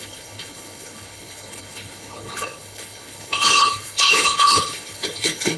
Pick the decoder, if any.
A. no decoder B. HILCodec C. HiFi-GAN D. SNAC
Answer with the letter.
B